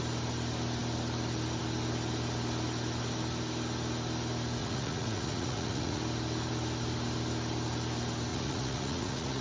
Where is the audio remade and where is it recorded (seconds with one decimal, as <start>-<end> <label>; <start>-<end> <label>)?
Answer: 0.0-4.6 recorded; 4.6-6.0 remade; 6.0-8.3 recorded; 8.3-9.4 remade